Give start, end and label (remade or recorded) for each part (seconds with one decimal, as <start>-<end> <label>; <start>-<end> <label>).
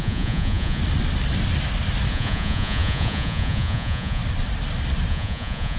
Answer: 0.0-0.8 remade; 0.8-2.1 recorded; 2.1-4.2 remade; 4.2-5.1 recorded; 5.1-5.8 remade